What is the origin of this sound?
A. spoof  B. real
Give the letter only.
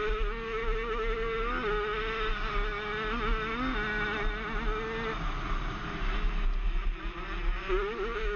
B